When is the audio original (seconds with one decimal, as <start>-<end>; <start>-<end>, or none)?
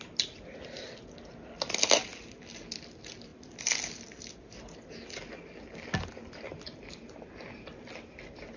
0.0-8.6